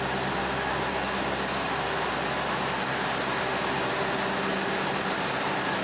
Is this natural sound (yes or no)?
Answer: yes